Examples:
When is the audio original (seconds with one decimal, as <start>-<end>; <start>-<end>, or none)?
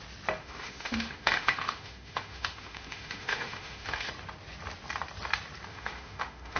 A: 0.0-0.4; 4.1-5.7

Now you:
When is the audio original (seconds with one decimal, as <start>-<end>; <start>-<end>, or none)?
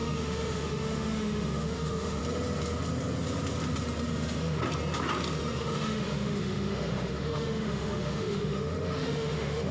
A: 2.2-4.1; 4.6-5.4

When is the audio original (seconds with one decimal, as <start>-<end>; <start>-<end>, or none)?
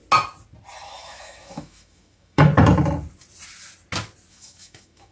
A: 0.0-0.9; 2.5-4.3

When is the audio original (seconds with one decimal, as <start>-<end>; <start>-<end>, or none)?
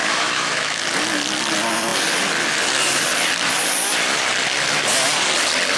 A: 0.8-5.8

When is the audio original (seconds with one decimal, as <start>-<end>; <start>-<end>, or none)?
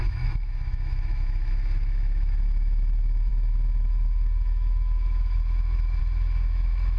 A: none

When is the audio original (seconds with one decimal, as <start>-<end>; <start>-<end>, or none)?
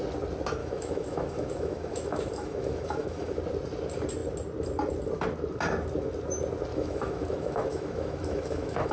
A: 0.0-0.6; 3.4-6.7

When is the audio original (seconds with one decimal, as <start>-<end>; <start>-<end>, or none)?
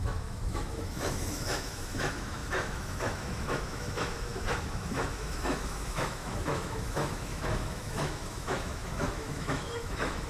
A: none